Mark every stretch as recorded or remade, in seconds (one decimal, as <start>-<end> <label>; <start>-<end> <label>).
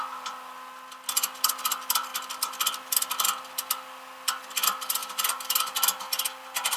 0.0-5.0 recorded; 5.0-5.7 remade; 5.7-6.8 recorded